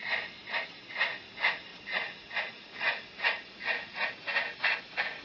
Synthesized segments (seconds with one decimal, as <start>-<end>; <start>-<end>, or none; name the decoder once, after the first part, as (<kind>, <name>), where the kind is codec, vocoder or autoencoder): 0.0-1.7 (vocoder, BigVGAN v2); 4.8-5.2